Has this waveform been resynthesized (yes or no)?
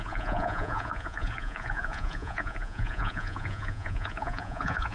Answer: yes